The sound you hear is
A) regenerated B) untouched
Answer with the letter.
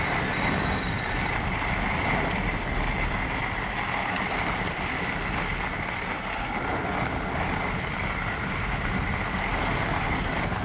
B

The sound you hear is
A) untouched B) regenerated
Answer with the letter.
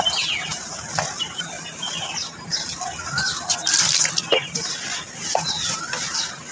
B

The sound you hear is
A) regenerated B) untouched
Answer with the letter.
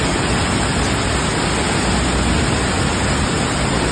B